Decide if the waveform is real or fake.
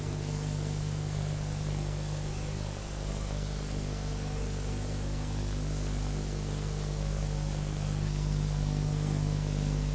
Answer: fake